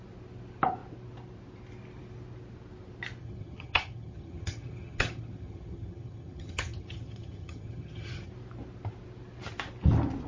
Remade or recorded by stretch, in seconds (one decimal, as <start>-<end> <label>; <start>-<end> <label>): 0.0-3.2 recorded; 3.2-8.3 remade; 8.3-10.3 recorded